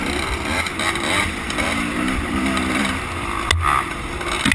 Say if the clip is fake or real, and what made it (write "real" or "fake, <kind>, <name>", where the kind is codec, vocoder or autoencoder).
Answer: real